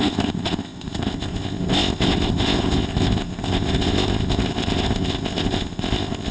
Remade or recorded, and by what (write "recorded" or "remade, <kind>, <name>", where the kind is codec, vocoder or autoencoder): remade, codec, ZipCodec